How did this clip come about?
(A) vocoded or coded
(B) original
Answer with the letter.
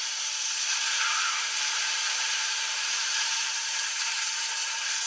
A